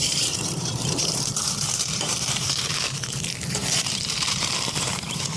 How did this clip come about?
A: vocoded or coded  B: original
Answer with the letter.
A